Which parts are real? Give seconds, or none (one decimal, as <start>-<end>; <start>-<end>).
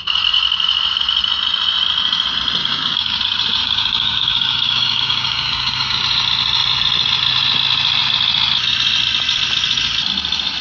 0.0-2.6; 3.2-3.6; 6.0-10.6